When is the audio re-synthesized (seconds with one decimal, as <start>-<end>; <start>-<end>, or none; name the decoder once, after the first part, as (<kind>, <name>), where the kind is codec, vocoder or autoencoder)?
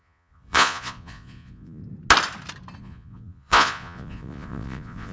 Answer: 0.0-1.8 (vocoder, Vocos); 2.8-5.1